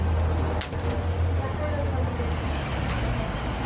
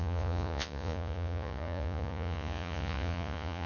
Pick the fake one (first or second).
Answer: second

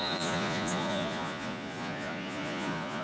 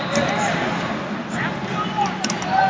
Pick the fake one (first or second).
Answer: first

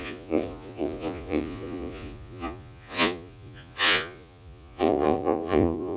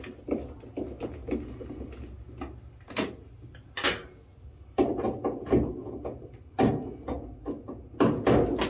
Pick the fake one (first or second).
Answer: first